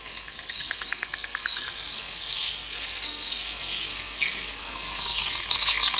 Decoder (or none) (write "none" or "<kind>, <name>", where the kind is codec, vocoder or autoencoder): codec, SNAC